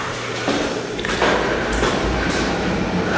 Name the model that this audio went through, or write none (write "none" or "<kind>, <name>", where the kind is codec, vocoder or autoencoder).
vocoder, BigVGAN v2